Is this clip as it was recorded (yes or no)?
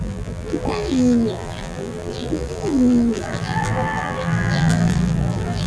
no